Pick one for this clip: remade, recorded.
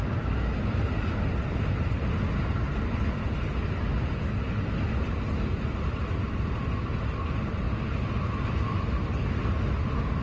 recorded